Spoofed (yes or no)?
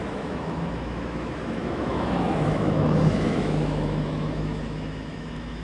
yes